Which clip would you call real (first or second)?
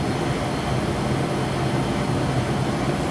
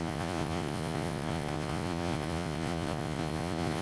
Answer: first